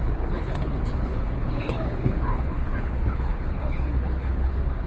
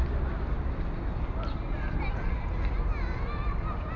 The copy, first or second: first